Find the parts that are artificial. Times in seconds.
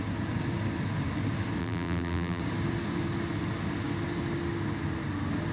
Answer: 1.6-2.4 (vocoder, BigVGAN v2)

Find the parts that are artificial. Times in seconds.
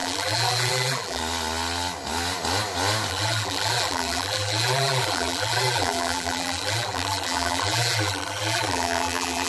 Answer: 0.0-1.2 (vocoder, BigVGAN v2); 3.1-9.5